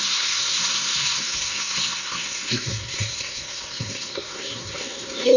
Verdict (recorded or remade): remade